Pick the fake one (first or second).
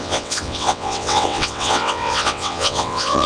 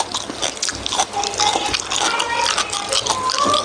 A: first